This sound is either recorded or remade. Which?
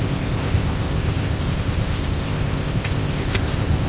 remade